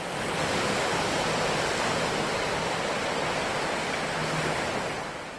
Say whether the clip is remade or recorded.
recorded